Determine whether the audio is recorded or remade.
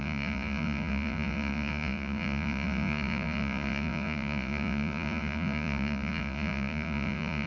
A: remade